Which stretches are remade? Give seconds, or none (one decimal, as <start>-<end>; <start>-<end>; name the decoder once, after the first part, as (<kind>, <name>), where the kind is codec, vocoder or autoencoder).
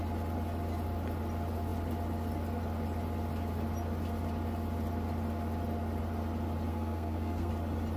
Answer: 6.7-7.5 (codec, SNAC)